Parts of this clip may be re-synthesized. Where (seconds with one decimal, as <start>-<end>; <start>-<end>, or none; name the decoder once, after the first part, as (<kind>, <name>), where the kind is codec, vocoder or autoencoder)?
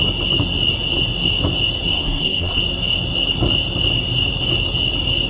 1.9-2.6 (codec, SNAC)